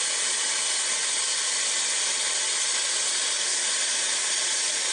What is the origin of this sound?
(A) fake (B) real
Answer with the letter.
B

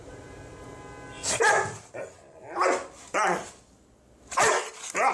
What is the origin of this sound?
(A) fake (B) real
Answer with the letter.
B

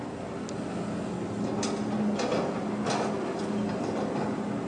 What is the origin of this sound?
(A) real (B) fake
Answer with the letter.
A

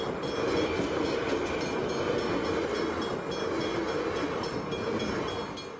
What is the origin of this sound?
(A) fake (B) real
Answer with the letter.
B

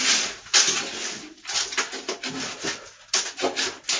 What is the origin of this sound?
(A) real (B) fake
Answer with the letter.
A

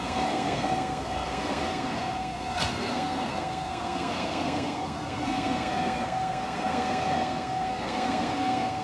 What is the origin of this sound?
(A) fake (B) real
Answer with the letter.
A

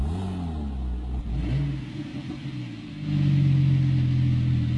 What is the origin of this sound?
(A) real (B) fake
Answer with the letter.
A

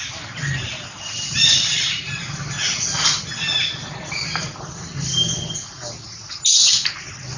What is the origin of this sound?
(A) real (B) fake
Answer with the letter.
A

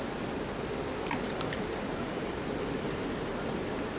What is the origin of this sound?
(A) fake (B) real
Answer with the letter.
B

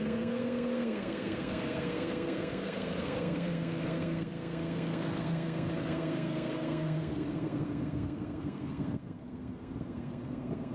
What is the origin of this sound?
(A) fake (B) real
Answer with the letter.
A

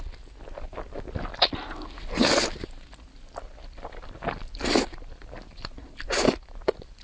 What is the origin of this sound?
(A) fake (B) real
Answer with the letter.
B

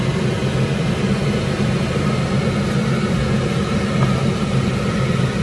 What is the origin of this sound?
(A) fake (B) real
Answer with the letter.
B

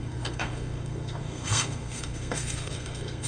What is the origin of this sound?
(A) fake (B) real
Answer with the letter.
A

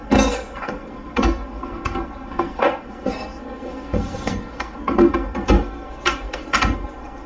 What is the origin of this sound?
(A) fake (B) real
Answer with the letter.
A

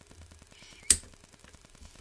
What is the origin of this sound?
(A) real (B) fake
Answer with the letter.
A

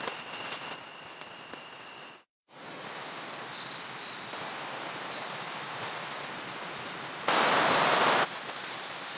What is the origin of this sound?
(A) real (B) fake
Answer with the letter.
A